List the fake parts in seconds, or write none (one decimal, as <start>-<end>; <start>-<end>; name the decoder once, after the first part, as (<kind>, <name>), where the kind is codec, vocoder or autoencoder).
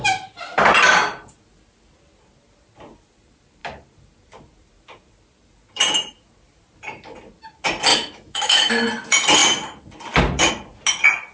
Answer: 7.9-8.7 (autoencoder, DAC-VAE)